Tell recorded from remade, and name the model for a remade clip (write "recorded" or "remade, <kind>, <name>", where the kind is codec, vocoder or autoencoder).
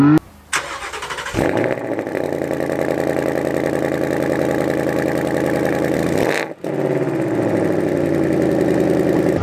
recorded